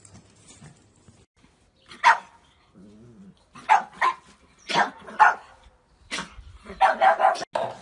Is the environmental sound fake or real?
real